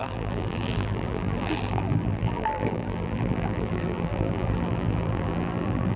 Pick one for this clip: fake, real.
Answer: fake